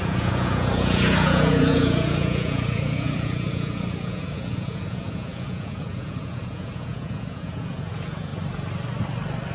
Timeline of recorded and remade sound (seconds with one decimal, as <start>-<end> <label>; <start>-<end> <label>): 0.0-8.3 remade; 8.3-9.5 recorded